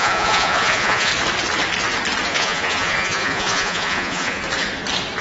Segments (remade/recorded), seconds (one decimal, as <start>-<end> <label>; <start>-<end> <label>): 0.0-1.1 remade; 1.1-2.3 recorded; 2.3-4.4 remade; 4.4-5.2 recorded